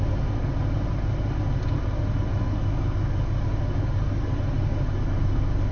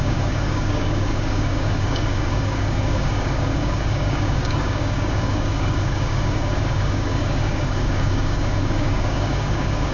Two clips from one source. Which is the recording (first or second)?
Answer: first